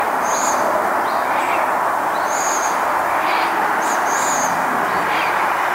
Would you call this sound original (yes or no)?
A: yes